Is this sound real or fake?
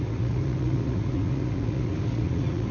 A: fake